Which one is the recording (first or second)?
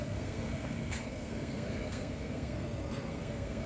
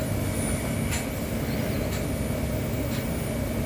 second